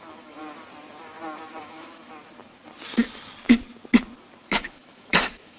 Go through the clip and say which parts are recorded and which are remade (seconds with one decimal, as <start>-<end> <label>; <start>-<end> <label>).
0.0-0.4 remade; 0.4-1.6 recorded; 1.6-2.1 remade; 2.1-4.4 recorded; 4.4-5.6 remade